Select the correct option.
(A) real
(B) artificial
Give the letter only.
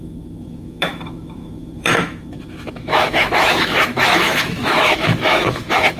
B